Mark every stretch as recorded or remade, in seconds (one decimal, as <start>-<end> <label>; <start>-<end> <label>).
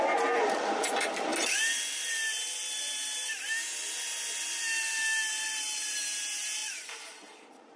0.0-1.3 remade; 1.3-2.8 recorded; 2.8-3.7 remade; 3.7-4.6 recorded; 4.6-7.8 remade